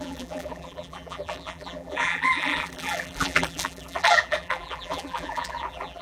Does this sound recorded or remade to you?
remade